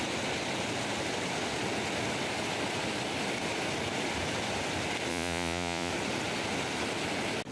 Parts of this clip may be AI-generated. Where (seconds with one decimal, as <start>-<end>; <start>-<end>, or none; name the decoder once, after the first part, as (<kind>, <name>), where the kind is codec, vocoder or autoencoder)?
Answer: 5.1-5.9 (vocoder, Vocos)

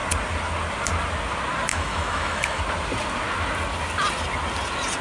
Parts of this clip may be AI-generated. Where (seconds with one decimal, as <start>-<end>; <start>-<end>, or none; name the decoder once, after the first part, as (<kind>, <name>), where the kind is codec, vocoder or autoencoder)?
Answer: 1.7-2.6 (autoencoder, DAC-VAE)

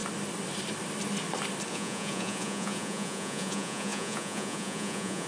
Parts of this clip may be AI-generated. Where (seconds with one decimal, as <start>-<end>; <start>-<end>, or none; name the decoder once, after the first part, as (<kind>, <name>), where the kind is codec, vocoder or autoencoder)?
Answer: 1.7-5.3 (vocoder, Vocos)

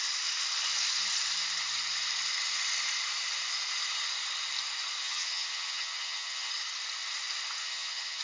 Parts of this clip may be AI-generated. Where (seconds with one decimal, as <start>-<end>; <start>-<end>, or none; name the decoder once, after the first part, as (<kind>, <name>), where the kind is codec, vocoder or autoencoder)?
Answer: 5.0-6.5 (vocoder, HiFi-GAN); 7.6-8.2

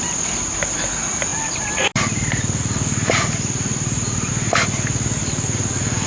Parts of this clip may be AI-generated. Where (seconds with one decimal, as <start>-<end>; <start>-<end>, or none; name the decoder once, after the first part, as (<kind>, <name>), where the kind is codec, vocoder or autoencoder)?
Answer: none